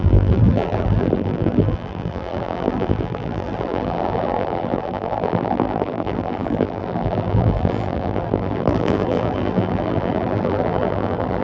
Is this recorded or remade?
remade